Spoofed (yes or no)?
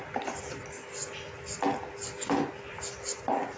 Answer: no